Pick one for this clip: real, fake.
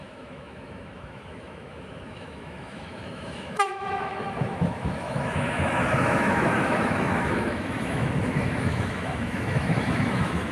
fake